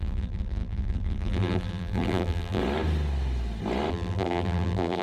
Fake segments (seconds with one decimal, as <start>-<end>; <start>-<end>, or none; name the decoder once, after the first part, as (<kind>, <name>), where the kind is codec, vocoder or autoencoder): 0.0-2.6 (vocoder, BigVGAN v2); 3.9-5.0